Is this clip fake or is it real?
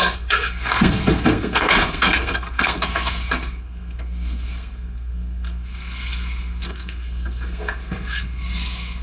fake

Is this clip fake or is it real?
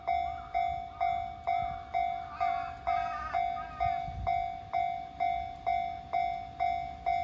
real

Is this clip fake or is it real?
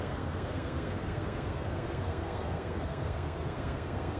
fake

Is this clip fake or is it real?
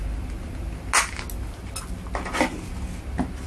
real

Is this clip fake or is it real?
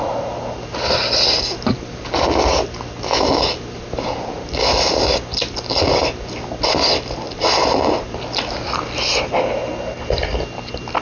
real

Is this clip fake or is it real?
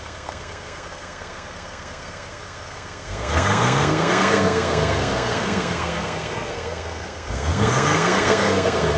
fake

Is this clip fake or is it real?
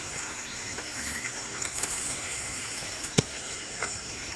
fake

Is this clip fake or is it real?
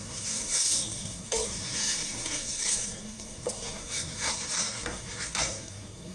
fake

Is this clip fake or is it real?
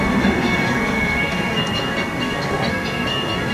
fake